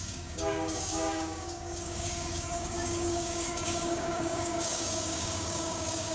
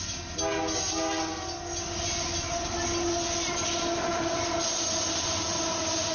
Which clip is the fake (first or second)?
first